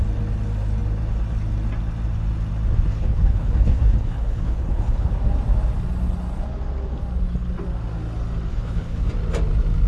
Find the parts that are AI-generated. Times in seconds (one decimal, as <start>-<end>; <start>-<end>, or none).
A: 2.9-5.1; 8.5-9.1